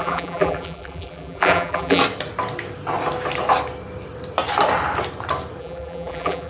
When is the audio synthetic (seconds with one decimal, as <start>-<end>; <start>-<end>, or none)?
0.0-2.0; 5.6-6.5